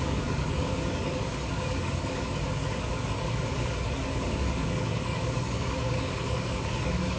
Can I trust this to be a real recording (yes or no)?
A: no